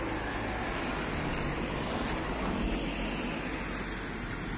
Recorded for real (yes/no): yes